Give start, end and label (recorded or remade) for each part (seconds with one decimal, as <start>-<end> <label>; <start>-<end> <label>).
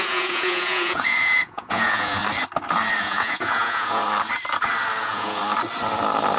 0.0-2.2 remade; 2.2-3.0 recorded; 3.0-4.0 remade; 4.0-5.0 recorded; 5.0-5.4 remade; 5.4-6.4 recorded